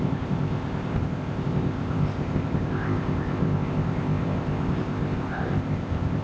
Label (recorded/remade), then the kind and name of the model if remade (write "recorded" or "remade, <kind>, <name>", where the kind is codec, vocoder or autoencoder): remade, codec, ZipCodec